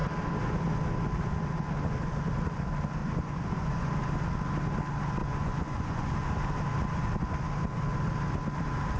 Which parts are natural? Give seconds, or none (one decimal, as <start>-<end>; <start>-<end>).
0.0-3.0; 3.9-5.2; 6.1-9.0